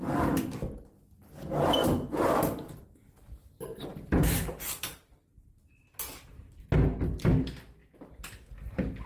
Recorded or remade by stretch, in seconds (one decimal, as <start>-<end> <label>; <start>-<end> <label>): 0.0-1.8 recorded; 1.8-2.7 remade; 2.7-3.9 recorded; 3.9-5.8 remade; 5.8-9.1 recorded